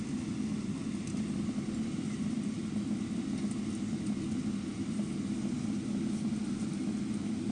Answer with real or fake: real